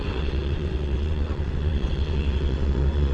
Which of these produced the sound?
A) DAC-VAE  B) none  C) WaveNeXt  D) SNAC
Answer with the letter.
C